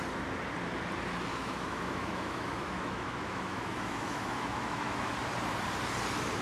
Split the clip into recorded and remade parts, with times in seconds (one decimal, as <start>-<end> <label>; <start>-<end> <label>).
0.0-1.3 recorded; 1.3-5.1 remade; 5.1-6.4 recorded